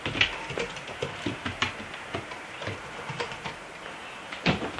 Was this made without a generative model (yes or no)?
yes